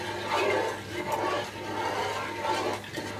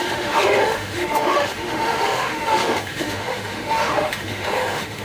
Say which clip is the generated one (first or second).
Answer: second